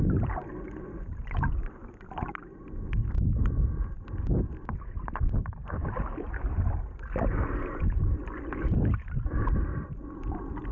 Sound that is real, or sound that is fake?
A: real